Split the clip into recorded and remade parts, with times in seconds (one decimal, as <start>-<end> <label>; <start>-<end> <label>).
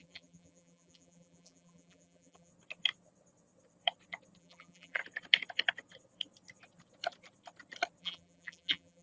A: 0.0-2.5 remade; 2.5-4.4 recorded; 4.4-5.0 remade; 5.0-8.0 recorded; 8.0-9.0 remade